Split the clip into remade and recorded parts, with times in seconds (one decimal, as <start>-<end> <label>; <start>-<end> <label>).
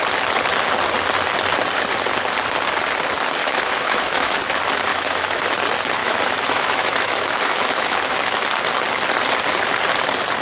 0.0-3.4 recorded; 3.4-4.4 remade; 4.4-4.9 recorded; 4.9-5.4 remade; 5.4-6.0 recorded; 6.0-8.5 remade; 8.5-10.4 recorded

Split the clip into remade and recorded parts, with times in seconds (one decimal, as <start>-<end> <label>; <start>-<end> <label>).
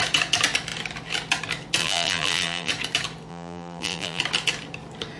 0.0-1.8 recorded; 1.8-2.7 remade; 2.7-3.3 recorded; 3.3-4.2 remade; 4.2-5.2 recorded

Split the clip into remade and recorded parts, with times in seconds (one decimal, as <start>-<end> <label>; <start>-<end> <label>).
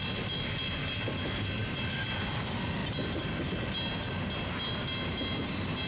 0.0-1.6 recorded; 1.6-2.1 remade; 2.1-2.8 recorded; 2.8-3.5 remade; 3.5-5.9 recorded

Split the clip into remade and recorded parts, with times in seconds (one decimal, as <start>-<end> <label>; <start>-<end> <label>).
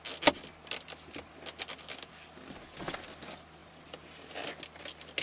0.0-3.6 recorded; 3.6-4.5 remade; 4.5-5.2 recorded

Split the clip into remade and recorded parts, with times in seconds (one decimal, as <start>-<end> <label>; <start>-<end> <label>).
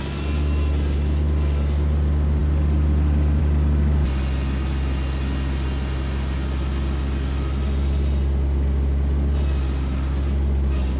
0.0-11.0 recorded